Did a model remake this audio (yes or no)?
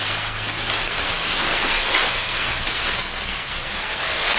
yes